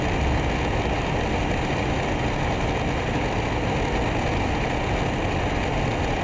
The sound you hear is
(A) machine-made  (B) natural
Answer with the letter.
B